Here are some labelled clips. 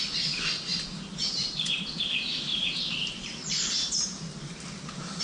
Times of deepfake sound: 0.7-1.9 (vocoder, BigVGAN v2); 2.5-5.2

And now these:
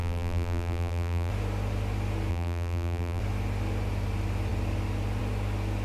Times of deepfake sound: 0.0-1.3 (vocoder, BigVGAN v2); 2.3-3.2